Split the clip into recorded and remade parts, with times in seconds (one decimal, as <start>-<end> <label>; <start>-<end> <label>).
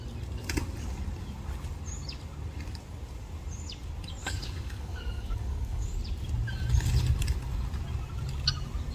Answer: 0.0-4.2 recorded; 4.2-6.0 remade; 6.0-8.9 recorded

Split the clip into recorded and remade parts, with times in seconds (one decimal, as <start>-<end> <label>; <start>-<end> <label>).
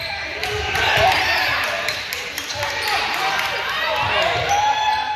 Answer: 0.0-0.4 recorded; 0.4-3.5 remade; 3.5-5.2 recorded